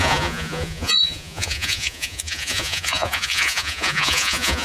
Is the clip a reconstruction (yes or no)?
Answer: yes